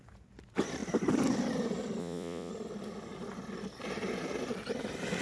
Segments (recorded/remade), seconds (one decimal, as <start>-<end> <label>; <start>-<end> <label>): 0.0-2.0 recorded; 2.0-2.5 remade; 2.5-5.2 recorded